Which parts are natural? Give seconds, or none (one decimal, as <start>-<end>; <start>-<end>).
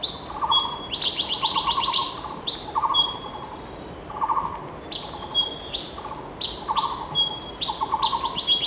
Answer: 0.0-8.7